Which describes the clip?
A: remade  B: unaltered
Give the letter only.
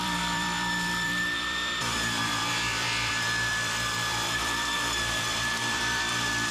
A